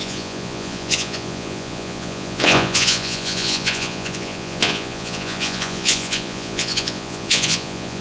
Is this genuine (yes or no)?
no